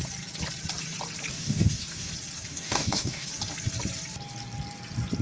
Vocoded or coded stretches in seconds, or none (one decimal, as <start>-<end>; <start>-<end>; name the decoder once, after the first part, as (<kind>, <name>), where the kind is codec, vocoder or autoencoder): 1.3-2.1 (codec, DAC); 2.5-3.3